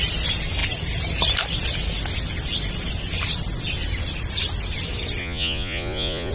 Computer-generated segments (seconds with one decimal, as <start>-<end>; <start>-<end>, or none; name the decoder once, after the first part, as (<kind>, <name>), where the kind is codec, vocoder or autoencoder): 5.2-6.3 (vocoder, Vocos)